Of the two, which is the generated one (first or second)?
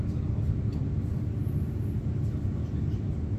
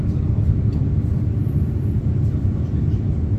second